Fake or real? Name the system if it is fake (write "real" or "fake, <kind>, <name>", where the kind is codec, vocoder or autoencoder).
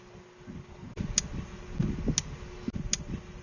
real